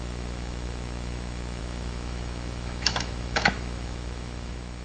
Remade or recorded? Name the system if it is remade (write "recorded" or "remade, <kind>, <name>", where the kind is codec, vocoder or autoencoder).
remade, autoencoder, DAC-VAE